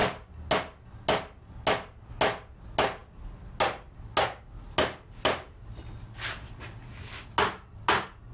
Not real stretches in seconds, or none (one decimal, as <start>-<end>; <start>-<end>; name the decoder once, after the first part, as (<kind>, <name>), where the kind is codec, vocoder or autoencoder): none